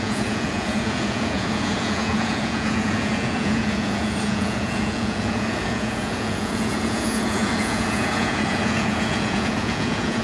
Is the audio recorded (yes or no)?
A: no